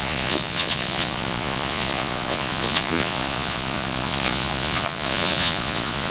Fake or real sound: fake